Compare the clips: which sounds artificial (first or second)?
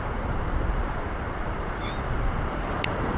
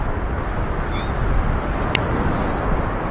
first